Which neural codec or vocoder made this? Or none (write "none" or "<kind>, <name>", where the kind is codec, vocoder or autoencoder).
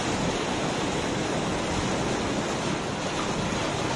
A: none